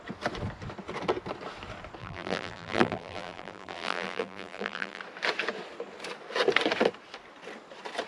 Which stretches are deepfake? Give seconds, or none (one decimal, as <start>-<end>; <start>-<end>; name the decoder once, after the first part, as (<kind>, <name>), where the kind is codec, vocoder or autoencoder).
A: 2.0-5.0 (vocoder, BigVGAN v2)